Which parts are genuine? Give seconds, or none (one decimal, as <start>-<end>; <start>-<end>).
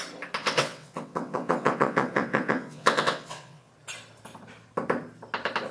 0.0-0.4; 3.7-5.7